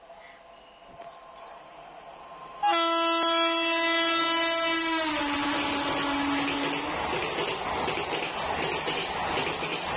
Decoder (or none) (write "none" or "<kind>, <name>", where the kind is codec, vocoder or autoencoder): none